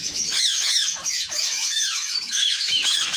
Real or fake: fake